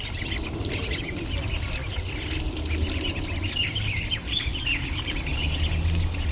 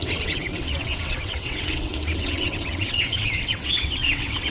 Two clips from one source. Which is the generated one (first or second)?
second